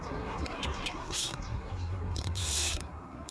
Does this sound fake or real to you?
fake